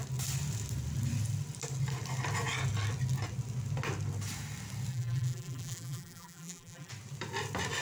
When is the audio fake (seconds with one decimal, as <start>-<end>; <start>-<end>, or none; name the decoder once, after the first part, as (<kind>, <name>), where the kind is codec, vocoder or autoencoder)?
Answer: 4.9-6.9 (vocoder, BigVGAN v2)